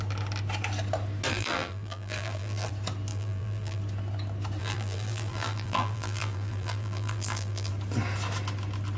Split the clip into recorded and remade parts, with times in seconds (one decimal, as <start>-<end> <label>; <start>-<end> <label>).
0.0-1.3 recorded; 1.3-2.7 remade; 2.7-3.1 recorded; 3.1-3.8 remade; 3.8-4.6 recorded; 4.6-7.7 remade; 7.7-9.0 recorded